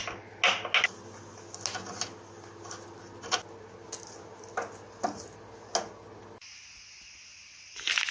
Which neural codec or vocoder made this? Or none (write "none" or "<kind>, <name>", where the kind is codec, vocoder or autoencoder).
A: none